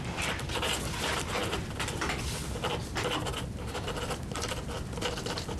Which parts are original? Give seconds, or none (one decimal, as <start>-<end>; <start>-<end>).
0.0-5.6